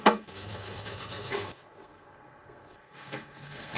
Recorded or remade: remade